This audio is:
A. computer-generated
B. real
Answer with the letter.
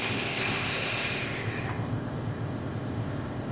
A